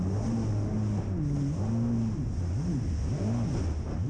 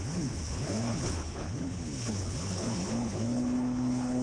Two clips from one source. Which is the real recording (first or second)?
first